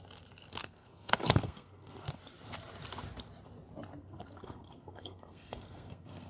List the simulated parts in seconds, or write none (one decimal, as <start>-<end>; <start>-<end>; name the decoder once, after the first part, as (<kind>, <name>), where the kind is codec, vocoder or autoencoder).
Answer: 0.6-2.2 (codec, SNAC); 3.9-6.3